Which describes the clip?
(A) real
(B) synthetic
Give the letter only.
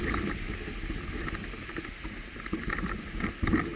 A